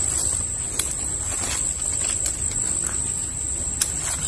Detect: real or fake real